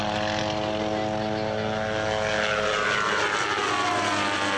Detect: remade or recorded recorded